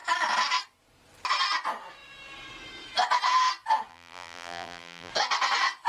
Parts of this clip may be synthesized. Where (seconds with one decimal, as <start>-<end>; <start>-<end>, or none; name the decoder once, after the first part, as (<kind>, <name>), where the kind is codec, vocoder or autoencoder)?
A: 3.9-5.1 (vocoder, BigVGAN v2)